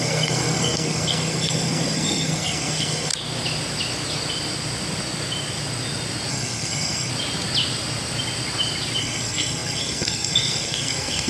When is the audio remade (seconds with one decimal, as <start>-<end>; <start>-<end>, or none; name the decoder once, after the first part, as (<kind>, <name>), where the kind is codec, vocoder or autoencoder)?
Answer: 0.0-3.1 (codec, SNAC); 6.3-7.1; 9.0-11.3